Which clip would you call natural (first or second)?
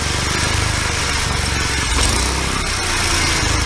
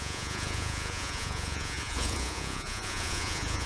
first